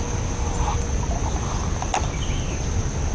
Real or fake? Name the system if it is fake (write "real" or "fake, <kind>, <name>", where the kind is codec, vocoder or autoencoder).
real